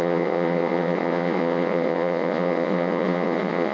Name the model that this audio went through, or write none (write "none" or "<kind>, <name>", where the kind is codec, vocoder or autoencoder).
vocoder, Vocos